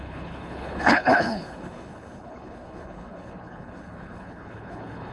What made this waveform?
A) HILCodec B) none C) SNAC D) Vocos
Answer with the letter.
A